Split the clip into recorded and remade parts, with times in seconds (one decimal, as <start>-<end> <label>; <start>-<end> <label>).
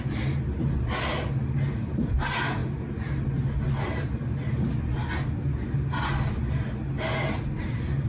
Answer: 0.0-8.1 recorded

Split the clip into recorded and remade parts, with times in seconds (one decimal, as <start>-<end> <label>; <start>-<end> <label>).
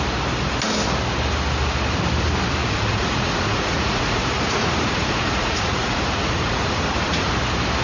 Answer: 0.0-2.6 recorded; 2.6-7.3 remade; 7.3-7.8 recorded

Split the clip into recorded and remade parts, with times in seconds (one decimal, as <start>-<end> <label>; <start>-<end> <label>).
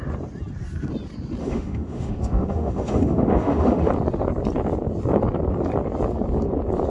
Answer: 0.0-1.4 recorded; 1.4-3.9 remade; 3.9-6.9 recorded